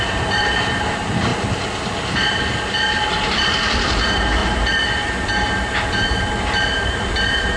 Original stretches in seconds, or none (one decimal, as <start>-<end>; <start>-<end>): 1.3-2.4